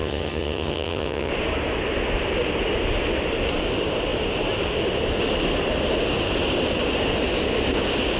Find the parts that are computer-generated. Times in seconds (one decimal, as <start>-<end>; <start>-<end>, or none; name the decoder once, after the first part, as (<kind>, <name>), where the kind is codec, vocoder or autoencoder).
0.0-1.3 (vocoder, HiFi-GAN)